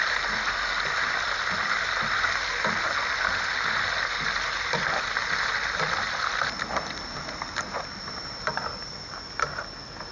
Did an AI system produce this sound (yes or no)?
no